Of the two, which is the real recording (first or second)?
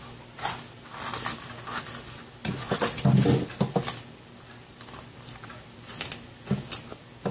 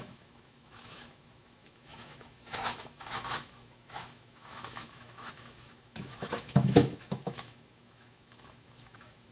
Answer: first